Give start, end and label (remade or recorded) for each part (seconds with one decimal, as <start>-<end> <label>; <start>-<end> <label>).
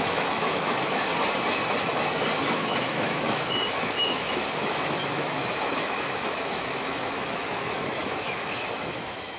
0.0-1.1 remade; 1.1-2.5 recorded; 2.5-9.4 remade